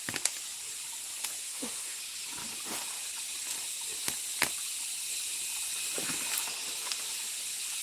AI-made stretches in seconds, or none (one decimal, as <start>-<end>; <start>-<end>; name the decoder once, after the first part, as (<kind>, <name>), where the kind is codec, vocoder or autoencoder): 1.4-2.0 (autoencoder, DAC-VAE)